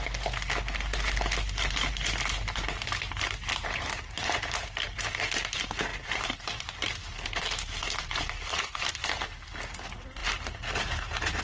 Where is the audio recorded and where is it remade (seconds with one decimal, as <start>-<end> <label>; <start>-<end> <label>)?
0.0-5.9 recorded; 5.9-8.9 remade; 8.9-11.4 recorded